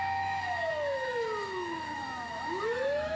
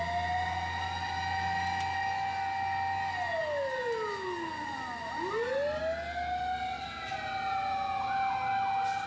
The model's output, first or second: first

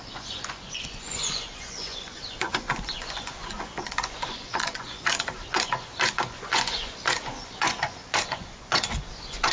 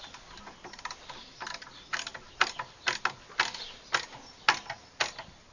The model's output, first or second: first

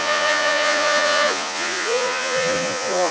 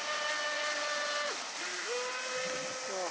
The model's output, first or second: first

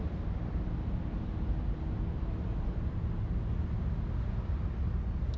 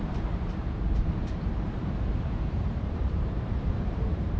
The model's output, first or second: second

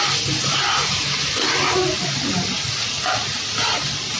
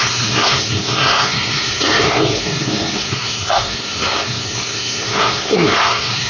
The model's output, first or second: second